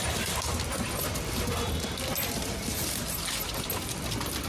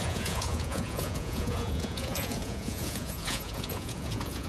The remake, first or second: second